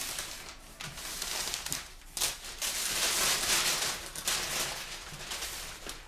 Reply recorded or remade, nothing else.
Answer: recorded